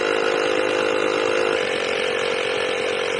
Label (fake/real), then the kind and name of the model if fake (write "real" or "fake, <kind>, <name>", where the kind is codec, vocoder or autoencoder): real